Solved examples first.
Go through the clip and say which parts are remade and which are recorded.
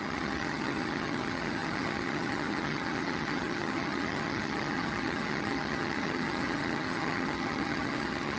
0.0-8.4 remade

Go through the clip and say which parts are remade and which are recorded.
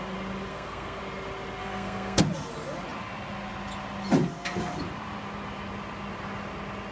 0.0-0.5 recorded; 0.5-1.0 remade; 1.0-1.6 recorded; 1.6-2.2 remade; 2.2-6.9 recorded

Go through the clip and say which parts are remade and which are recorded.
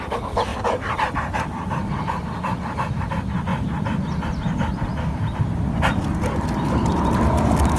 0.0-0.5 recorded; 0.5-2.9 remade; 2.9-3.5 recorded; 3.5-6.9 remade; 6.9-7.8 recorded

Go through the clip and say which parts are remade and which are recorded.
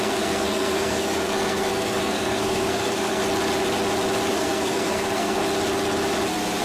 0.0-3.2 remade; 3.2-4.3 recorded; 4.3-5.4 remade; 5.4-6.6 recorded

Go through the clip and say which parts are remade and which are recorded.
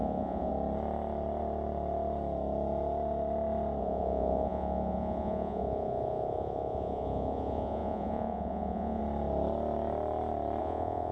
0.0-0.5 remade; 0.5-3.8 recorded; 3.8-9.0 remade; 9.0-10.6 recorded; 10.6-11.1 remade